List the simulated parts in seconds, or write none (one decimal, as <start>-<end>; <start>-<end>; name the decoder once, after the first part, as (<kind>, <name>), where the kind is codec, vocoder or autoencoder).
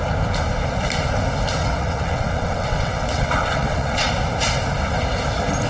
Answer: 1.6-4.1 (vocoder, WaveNeXt)